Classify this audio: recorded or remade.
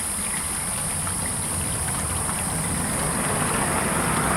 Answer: recorded